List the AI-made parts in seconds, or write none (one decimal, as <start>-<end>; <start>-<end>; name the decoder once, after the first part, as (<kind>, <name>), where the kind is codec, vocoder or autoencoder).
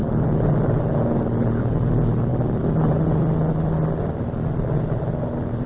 none